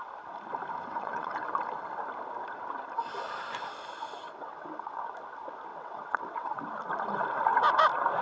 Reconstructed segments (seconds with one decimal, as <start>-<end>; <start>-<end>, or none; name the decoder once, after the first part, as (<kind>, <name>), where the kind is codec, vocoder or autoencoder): 0.9-1.5 (vocoder, WaveNeXt); 4.2-5.0; 5.7-6.6